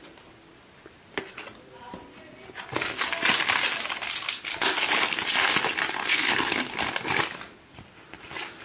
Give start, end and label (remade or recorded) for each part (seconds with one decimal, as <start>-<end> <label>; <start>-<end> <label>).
0.0-6.1 recorded; 6.1-6.7 remade; 6.7-8.6 recorded

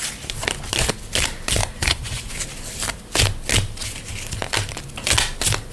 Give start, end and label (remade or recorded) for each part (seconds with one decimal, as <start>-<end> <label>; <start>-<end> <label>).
0.0-1.6 recorded; 1.6-2.3 remade; 2.3-5.7 recorded

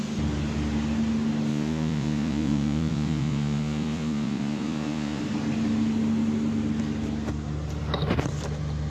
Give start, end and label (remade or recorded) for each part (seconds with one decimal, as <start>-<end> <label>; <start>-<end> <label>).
0.0-1.5 recorded; 1.5-5.2 remade; 5.2-8.9 recorded

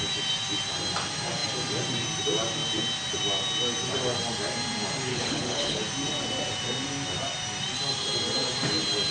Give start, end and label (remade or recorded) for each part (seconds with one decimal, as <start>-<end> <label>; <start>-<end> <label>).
0.0-5.1 recorded; 5.1-5.8 remade; 5.8-9.1 recorded

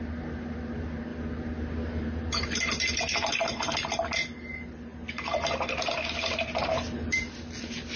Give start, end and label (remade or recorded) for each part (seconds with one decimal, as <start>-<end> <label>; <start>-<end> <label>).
0.0-8.0 recorded

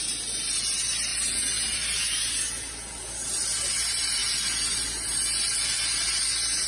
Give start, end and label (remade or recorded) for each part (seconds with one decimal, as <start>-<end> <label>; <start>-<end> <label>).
0.0-1.1 recorded; 1.1-2.0 remade; 2.0-6.7 recorded

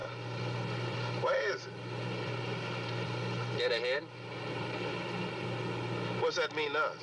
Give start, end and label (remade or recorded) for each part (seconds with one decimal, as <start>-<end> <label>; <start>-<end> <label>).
0.0-7.0 recorded